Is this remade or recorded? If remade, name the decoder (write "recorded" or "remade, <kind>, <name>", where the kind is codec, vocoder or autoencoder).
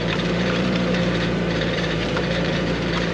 remade, vocoder, BigVGAN v2